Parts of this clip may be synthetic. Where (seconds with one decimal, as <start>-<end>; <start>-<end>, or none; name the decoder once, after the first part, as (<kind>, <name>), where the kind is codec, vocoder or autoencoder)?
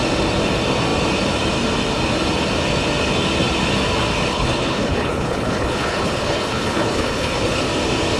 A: 4.3-7.6 (codec, HILCodec)